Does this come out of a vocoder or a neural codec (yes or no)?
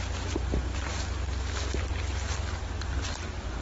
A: no